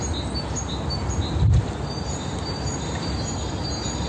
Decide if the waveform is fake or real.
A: real